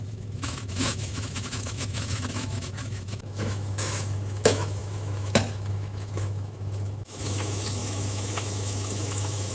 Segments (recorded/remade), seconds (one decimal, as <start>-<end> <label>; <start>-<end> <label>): 0.0-9.5 remade